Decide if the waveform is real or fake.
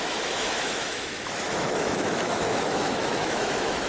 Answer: fake